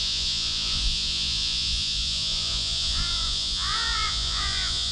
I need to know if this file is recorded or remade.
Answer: remade